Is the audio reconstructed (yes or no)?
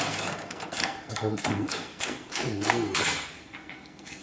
yes